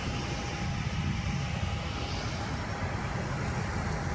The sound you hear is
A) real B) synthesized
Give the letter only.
A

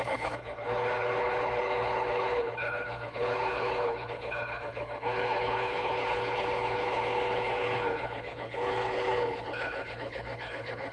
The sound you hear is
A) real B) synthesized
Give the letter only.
B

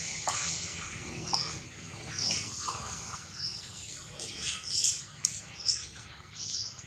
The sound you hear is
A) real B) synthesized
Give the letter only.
B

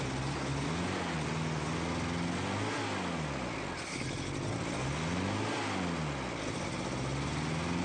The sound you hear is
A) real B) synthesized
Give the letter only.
A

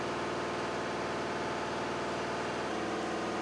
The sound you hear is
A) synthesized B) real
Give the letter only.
B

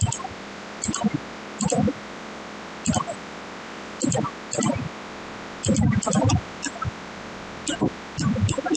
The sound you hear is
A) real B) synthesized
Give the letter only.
A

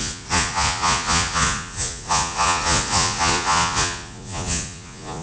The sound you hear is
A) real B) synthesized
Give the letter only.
B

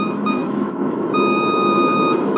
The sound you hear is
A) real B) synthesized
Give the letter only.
B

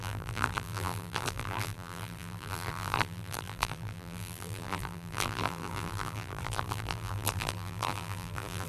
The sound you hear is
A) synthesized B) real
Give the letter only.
A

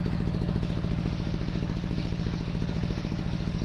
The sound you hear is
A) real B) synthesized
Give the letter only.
B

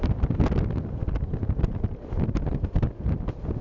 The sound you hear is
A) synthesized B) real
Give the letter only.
B